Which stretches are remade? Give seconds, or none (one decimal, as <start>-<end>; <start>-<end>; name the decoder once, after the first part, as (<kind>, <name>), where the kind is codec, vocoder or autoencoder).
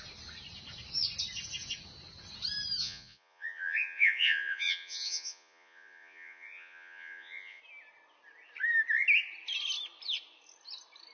2.8-7.6 (vocoder, Vocos)